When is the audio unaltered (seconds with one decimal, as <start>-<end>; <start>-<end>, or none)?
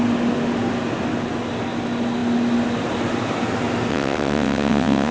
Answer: 0.0-3.9